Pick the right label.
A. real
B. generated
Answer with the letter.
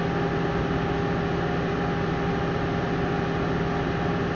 A